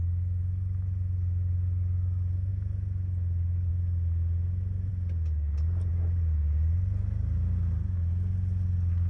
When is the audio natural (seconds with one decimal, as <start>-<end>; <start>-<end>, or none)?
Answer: 0.0-9.1